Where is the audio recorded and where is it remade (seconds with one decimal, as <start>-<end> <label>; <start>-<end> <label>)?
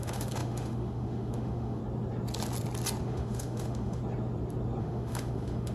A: 0.0-1.8 remade; 1.8-3.0 recorded; 3.0-4.0 remade; 4.0-4.8 recorded; 4.8-5.7 remade